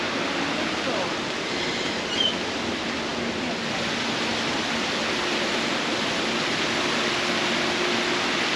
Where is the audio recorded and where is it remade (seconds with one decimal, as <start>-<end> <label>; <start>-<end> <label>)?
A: 0.0-8.6 recorded